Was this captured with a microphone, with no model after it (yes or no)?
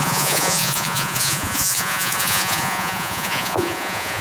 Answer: no